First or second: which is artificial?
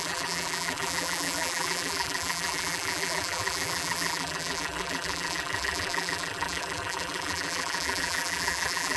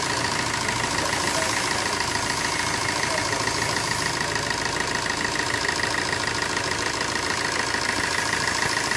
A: first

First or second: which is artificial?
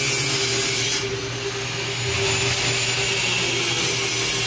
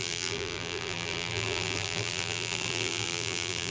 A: second